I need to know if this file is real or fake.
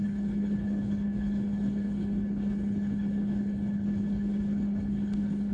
fake